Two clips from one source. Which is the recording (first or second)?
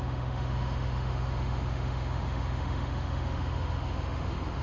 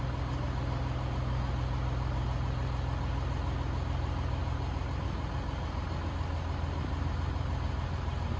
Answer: second